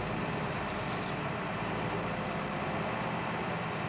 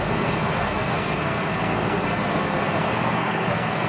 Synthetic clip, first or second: second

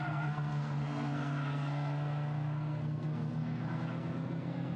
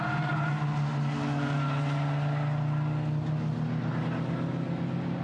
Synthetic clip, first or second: first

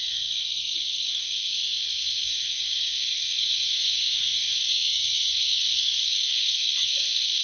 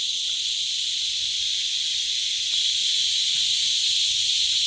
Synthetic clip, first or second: first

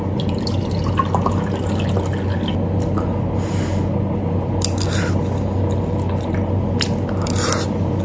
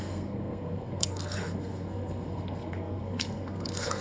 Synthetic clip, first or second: second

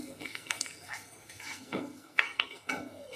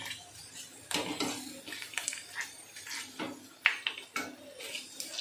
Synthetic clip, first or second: first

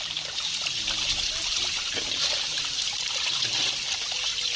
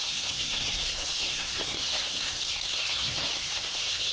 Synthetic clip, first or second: second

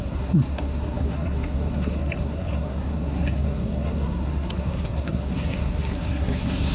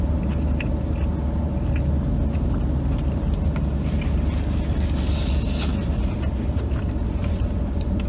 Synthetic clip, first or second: first